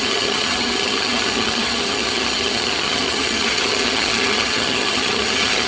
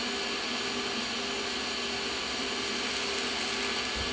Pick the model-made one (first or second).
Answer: first